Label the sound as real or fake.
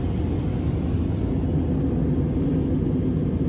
real